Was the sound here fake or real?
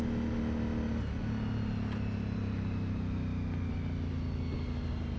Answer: real